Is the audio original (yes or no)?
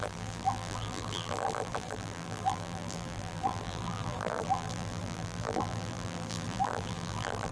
no